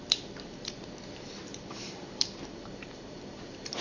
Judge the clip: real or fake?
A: fake